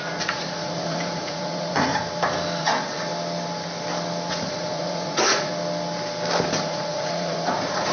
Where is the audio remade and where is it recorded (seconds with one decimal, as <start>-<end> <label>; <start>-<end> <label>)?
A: 0.0-1.9 remade; 1.9-2.6 recorded; 2.6-3.1 remade; 3.1-4.3 recorded; 4.3-5.5 remade; 5.5-6.5 recorded; 6.5-7.9 remade